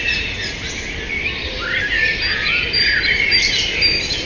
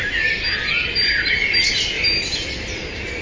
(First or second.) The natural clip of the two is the second